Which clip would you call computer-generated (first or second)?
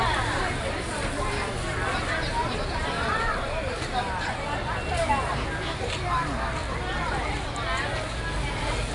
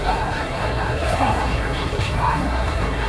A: second